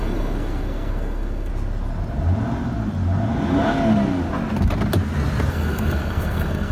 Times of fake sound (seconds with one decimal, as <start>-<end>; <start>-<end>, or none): 0.0-1.5; 5.5-6.7